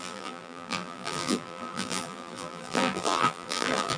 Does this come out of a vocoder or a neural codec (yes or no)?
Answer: yes